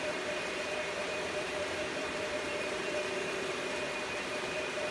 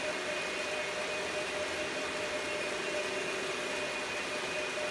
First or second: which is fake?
first